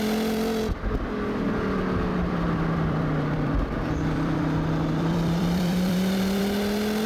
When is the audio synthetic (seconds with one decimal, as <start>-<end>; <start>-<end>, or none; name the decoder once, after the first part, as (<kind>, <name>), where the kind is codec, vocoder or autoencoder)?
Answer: 2.1-6.4 (vocoder, BigVGAN v2)